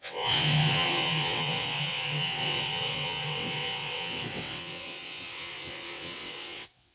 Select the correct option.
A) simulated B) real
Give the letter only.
A